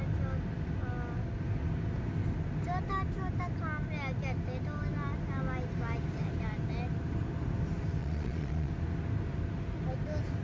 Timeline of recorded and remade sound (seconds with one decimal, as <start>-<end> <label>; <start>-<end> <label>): 0.0-8.0 recorded; 8.0-8.7 remade; 8.7-10.4 recorded